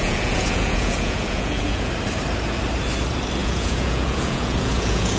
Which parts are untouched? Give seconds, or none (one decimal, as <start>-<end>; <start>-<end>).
1.9-3.4